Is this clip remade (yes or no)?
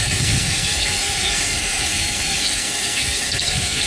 yes